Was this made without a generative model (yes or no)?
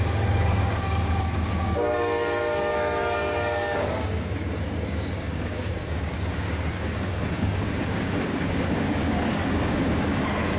no